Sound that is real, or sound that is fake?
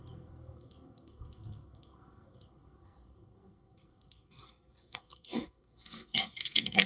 fake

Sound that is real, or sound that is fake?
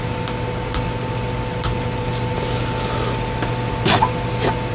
real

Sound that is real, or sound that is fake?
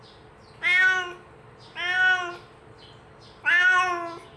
real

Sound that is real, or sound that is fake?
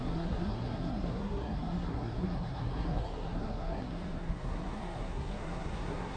fake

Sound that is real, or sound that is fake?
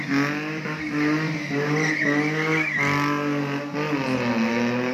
real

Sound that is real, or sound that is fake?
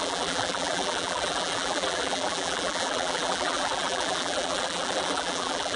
fake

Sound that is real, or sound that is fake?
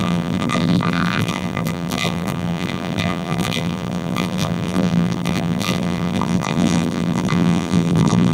fake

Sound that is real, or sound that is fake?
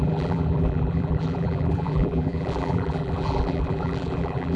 fake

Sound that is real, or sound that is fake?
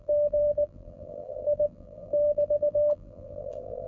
fake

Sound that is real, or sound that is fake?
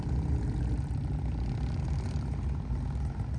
real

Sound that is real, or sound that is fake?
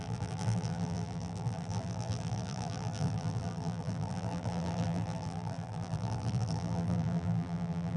fake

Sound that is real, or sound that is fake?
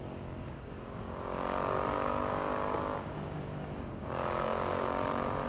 fake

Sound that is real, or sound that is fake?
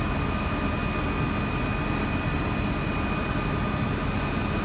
real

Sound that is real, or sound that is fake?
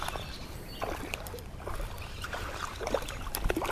real